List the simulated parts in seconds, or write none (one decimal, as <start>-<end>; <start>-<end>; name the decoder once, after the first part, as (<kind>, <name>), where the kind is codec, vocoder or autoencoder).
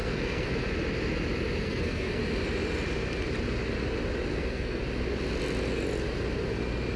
0.0-0.5 (codec, SNAC); 1.6-2.2; 4.3-4.8